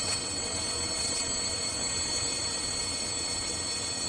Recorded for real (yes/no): no